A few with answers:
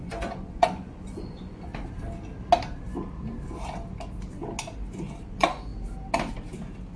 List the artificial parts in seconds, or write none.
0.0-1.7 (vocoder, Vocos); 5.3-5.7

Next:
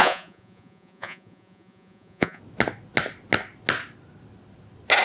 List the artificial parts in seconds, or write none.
0.0-2.4 (vocoder, Vocos)

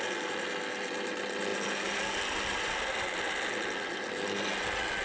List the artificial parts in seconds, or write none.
none

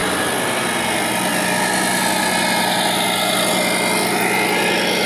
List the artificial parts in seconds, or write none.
none

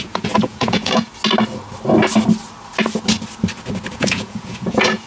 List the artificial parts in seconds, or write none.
0.0-1.1 (vocoder, Vocos); 3.9-5.1

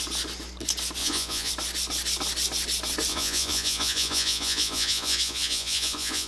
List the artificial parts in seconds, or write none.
1.0-1.5 (vocoder, Vocos); 3.1-6.3

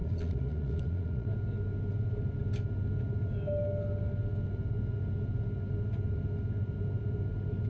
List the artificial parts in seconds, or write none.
0.0-1.3 (vocoder, Vocos)

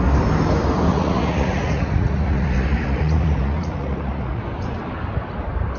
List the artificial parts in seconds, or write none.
0.9-4.4 (vocoder, Vocos)